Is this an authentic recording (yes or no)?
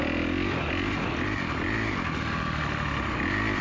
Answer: yes